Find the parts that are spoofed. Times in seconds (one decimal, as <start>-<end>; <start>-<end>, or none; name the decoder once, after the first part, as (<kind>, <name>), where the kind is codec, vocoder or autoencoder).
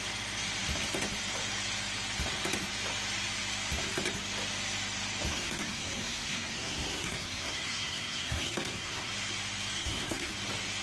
5.3-9.1 (codec, SNAC); 9.8-10.3